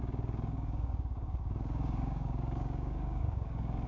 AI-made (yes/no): yes